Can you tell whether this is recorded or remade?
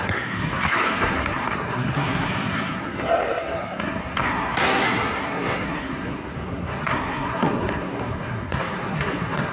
remade